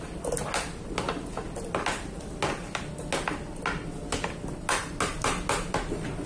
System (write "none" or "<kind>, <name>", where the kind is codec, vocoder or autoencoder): none